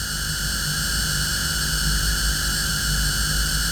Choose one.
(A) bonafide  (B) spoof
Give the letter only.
A